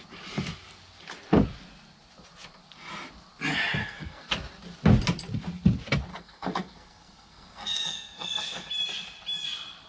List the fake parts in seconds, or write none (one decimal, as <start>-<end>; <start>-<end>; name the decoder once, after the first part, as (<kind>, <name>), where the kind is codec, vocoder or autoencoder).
3.8-4.3 (codec, SNAC); 6.1-8.7